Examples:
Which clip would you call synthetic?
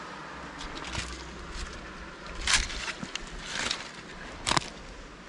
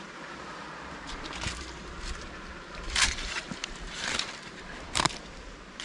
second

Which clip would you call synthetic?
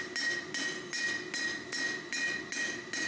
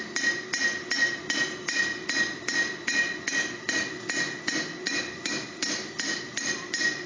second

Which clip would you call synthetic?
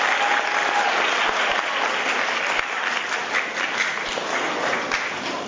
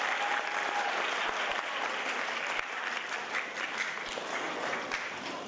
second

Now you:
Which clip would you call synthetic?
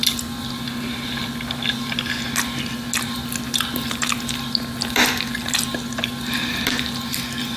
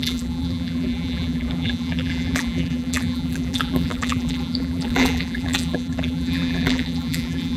second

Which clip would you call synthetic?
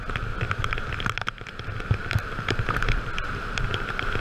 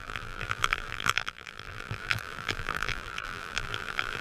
second